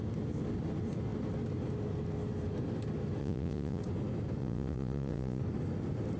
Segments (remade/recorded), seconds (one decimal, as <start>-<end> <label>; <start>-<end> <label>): 0.0-3.2 recorded; 3.2-3.8 remade; 3.8-4.4 recorded; 4.4-5.4 remade; 5.4-6.2 recorded